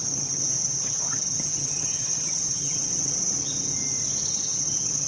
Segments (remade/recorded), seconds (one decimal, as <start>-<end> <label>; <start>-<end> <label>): 0.0-3.7 remade; 3.7-4.3 recorded; 4.3-5.1 remade